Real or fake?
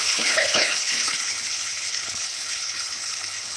fake